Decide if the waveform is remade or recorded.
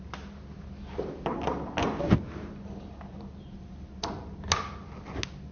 recorded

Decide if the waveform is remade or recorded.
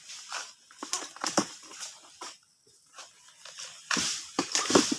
recorded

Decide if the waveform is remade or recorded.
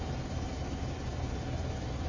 recorded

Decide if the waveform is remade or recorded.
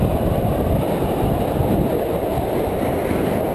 recorded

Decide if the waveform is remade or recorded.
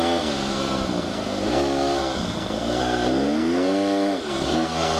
remade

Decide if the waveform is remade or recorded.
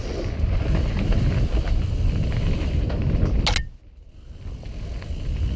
recorded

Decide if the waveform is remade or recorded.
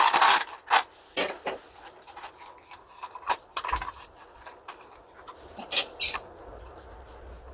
recorded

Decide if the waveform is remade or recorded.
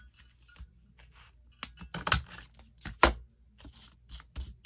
recorded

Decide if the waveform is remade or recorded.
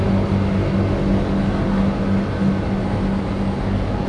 recorded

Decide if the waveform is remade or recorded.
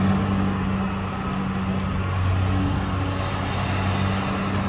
recorded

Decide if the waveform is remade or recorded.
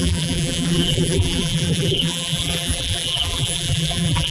remade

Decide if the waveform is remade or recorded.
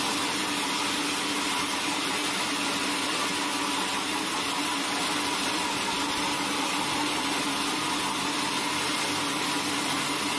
recorded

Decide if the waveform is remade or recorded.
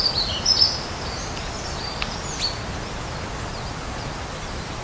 recorded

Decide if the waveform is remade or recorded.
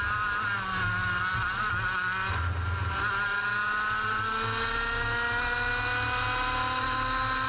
recorded